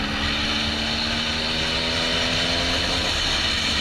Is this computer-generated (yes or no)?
no